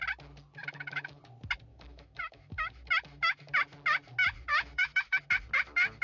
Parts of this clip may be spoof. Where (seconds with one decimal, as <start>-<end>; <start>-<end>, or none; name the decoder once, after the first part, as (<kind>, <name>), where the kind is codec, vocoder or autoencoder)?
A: 0.6-1.2 (autoencoder, DAC-VAE); 1.7-3.6; 4.5-5.2